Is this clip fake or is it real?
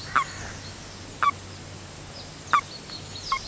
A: real